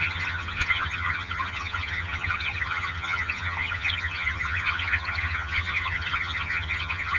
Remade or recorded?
remade